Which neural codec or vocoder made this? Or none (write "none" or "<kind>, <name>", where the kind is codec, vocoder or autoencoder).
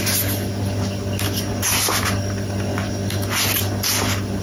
none